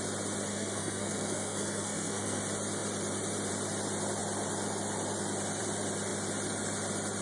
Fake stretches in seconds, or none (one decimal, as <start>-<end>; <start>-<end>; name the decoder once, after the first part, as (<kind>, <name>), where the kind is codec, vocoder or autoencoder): 0.5-2.4 (codec, SNAC)